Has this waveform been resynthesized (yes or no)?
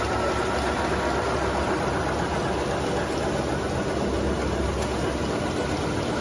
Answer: no